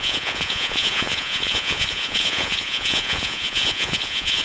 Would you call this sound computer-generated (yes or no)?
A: yes